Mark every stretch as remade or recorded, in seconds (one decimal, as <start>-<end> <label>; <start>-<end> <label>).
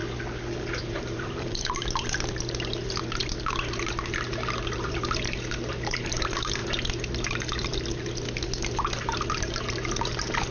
0.0-0.8 recorded; 0.8-1.8 remade; 1.8-5.9 recorded; 5.9-6.6 remade; 6.6-10.5 recorded